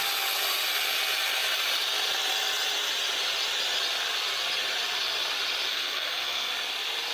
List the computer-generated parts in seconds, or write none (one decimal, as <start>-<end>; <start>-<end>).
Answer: 5.7-6.5